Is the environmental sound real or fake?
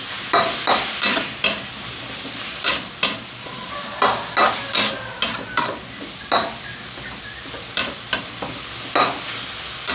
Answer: real